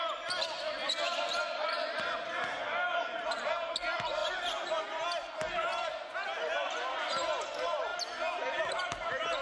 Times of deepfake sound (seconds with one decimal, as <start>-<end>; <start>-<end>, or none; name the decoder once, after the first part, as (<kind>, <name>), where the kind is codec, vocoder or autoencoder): none